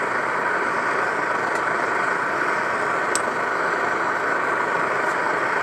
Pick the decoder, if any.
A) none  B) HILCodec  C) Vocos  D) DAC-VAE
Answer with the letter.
A